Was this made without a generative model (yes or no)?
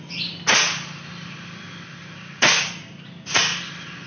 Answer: yes